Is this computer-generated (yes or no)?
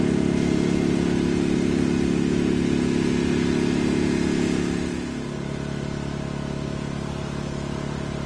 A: no